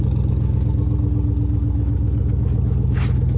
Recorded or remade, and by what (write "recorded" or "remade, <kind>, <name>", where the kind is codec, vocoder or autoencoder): recorded